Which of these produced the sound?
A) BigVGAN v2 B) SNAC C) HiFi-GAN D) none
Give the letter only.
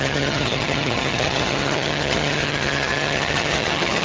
C